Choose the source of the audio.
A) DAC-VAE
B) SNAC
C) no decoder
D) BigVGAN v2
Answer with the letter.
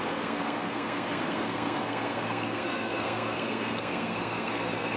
B